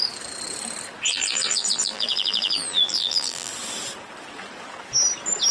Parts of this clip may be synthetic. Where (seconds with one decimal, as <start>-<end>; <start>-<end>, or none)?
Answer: 1.1-3.5